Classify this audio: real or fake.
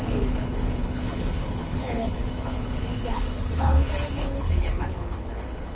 fake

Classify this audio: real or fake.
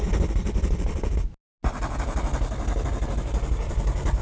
real